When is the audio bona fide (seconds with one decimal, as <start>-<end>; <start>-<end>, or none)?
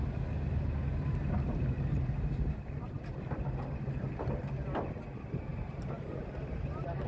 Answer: 0.0-0.9; 3.0-5.5; 6.3-7.1